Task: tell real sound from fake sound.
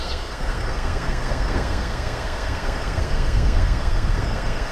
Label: fake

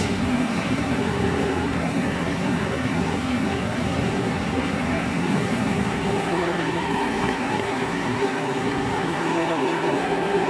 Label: fake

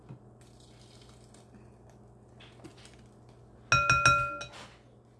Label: real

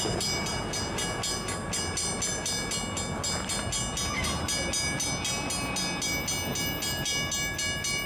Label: real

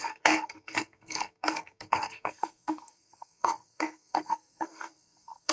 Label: fake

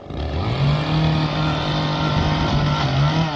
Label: real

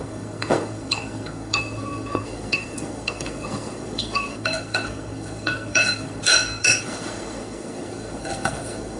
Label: fake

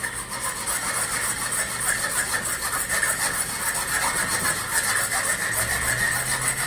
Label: real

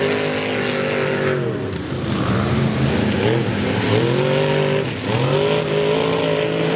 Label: real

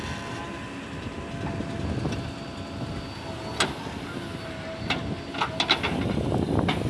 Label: real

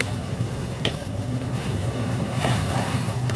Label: fake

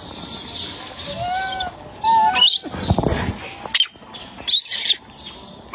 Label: real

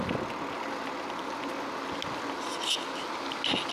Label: real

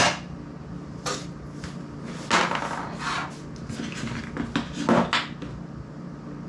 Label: real